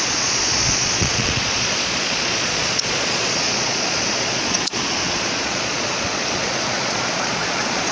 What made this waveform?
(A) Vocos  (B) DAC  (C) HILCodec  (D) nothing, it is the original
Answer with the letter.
A